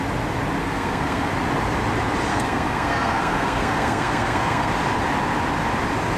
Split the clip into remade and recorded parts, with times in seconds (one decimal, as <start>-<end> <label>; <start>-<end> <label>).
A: 0.0-0.6 recorded; 0.6-1.3 remade; 1.3-2.3 recorded; 2.3-4.7 remade; 4.7-6.2 recorded